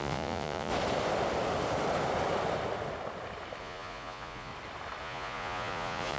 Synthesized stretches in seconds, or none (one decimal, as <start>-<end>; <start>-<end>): 0.0-0.7; 3.6-4.5; 5.0-6.2